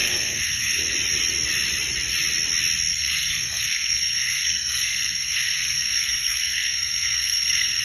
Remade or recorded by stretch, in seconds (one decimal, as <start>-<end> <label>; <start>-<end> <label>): 0.0-0.8 remade; 0.8-2.9 recorded; 2.9-7.8 remade